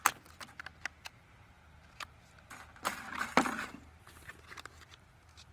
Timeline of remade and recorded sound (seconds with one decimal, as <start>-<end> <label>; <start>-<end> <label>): 0.0-5.5 recorded